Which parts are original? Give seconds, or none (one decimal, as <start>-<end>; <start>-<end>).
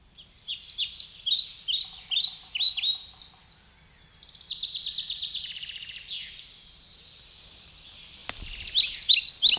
0.0-9.6